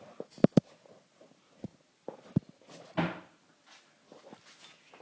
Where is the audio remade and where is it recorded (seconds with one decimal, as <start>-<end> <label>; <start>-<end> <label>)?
0.0-5.0 recorded